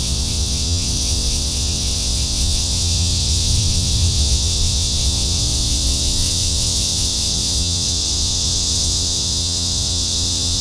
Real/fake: fake